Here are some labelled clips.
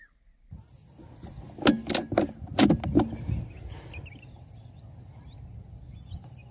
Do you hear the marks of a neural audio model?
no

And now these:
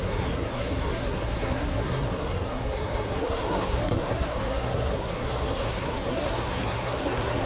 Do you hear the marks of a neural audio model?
yes